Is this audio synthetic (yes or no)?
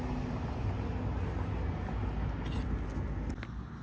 no